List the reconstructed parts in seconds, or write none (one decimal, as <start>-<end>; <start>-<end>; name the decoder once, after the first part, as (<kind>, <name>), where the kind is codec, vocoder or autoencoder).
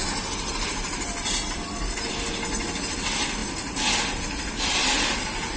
none